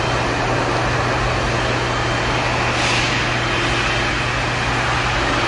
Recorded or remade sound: recorded